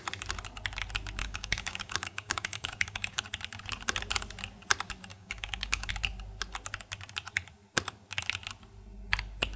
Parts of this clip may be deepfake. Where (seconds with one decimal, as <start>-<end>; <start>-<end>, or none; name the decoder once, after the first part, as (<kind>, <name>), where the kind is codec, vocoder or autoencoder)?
1.2-3.2 (codec, DAC); 5.1-5.9